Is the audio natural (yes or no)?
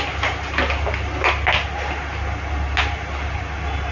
yes